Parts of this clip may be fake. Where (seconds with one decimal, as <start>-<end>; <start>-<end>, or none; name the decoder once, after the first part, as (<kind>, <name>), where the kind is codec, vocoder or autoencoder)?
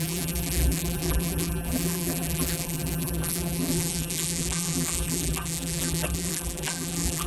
0.0-7.3 (vocoder, BigVGAN v2)